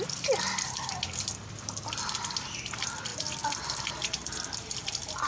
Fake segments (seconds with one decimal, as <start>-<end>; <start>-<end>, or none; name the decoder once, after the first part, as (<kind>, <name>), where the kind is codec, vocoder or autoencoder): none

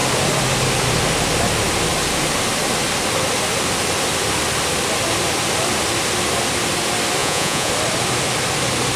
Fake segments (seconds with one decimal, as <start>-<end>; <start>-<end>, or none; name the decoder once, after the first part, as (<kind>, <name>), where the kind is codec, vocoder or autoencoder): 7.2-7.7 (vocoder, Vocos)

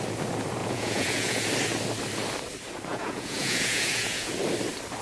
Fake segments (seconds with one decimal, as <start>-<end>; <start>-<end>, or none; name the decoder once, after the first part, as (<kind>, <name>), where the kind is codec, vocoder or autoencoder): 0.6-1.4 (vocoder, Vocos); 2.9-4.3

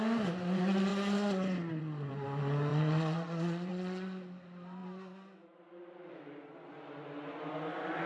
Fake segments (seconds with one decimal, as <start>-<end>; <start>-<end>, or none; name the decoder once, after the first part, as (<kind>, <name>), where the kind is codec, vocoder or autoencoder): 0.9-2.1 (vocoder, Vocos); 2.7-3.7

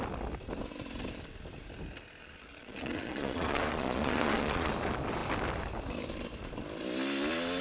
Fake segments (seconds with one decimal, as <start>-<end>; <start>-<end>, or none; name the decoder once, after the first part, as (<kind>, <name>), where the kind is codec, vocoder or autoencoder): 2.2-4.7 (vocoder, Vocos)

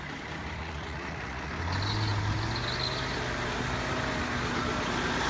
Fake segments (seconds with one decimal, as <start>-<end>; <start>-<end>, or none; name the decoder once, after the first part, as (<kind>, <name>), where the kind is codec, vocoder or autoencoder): 0.6-1.5 (vocoder, Vocos)

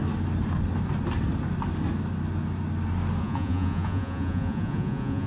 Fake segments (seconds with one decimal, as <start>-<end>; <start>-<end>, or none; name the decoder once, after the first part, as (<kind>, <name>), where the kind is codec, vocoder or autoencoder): 3.2-5.3 (vocoder, Vocos)